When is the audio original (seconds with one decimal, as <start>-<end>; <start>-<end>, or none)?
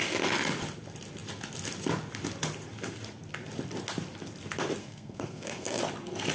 0.0-4.8; 5.8-6.3